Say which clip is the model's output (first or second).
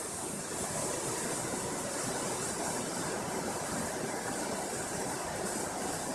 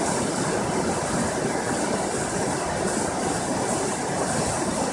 first